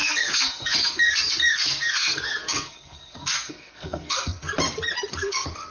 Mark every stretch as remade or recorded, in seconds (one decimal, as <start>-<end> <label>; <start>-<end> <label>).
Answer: 0.0-4.5 remade; 4.5-5.1 recorded; 5.1-5.7 remade